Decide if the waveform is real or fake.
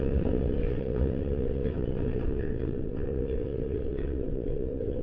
fake